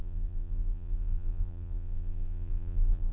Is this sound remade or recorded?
remade